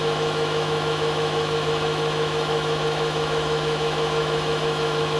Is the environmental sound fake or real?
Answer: fake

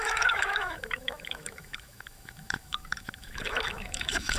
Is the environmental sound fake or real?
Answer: fake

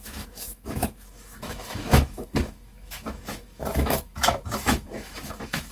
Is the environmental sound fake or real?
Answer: fake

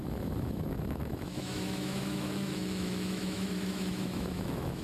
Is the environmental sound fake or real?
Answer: fake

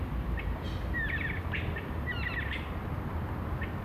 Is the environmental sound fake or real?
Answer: real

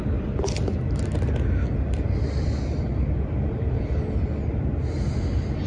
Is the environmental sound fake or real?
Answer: real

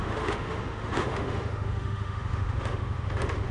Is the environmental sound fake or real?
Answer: fake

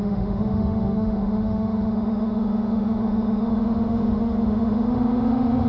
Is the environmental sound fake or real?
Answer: fake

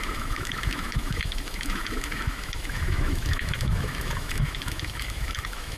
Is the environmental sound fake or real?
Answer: fake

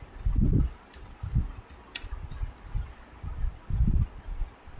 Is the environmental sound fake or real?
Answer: real